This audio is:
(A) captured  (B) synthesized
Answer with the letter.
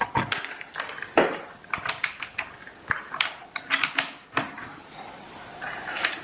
A